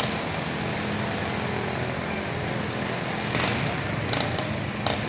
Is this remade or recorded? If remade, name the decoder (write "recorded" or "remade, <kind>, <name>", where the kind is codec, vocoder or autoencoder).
recorded